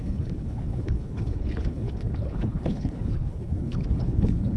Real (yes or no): no